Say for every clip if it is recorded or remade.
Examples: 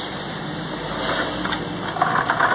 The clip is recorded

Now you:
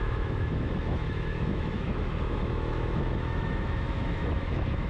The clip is remade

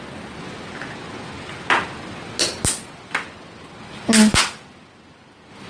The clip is recorded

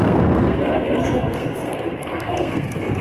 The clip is remade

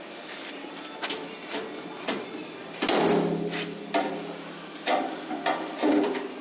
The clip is recorded